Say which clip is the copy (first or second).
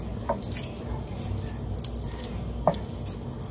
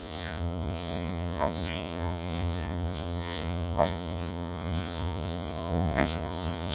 second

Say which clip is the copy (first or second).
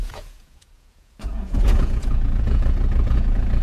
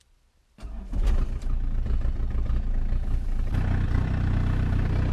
first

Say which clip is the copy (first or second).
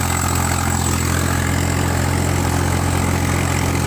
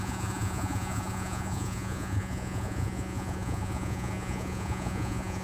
second